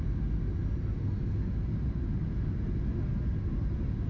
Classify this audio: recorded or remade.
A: recorded